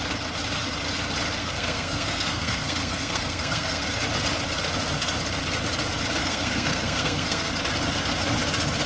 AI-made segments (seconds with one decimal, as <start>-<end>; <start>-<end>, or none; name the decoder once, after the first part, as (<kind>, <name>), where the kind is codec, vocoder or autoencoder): 1.4-3.8 (codec, SNAC); 6.2-7.5